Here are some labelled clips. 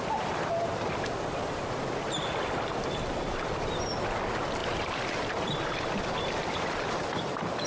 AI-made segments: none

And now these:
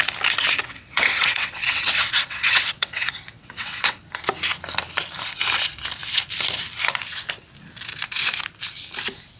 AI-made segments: 0.7-4.0 (vocoder, WaveNeXt)

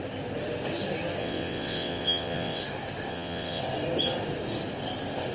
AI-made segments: 1.2-2.6 (vocoder, WaveNeXt); 3.1-3.6

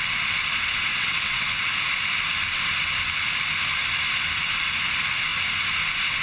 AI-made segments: 0.9-1.5 (vocoder, WaveNeXt)